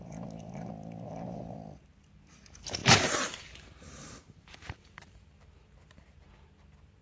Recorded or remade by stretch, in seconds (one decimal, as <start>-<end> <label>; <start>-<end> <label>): 0.0-2.8 recorded; 2.8-6.3 remade; 6.3-7.0 recorded